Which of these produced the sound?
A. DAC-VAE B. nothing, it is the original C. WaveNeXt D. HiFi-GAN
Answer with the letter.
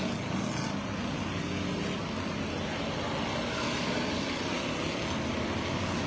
B